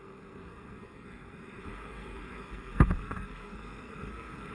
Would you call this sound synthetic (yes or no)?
yes